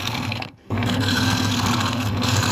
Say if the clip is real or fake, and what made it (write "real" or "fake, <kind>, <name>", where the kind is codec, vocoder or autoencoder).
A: fake, codec, SNAC